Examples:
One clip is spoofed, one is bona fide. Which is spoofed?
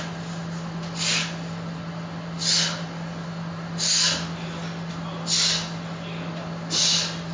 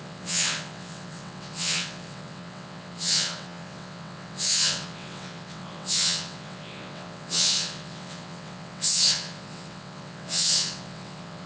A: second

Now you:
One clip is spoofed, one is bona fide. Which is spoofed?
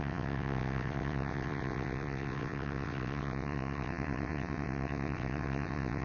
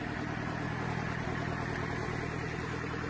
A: first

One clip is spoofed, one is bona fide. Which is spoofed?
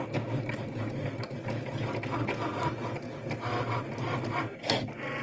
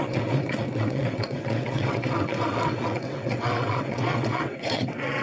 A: second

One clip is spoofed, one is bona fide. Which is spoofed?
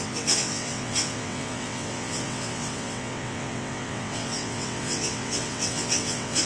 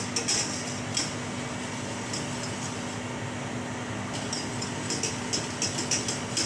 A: first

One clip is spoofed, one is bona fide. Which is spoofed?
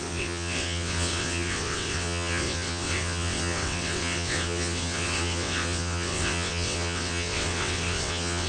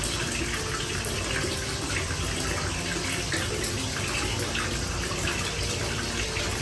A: first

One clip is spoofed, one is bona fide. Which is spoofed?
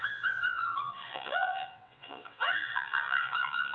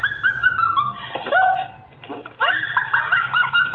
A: first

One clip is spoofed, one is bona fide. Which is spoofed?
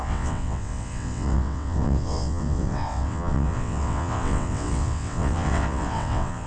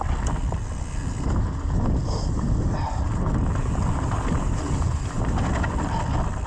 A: first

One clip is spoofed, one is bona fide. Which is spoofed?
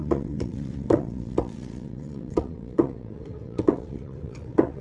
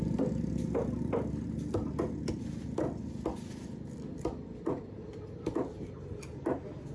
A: first